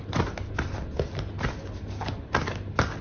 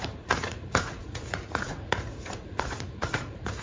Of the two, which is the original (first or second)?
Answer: first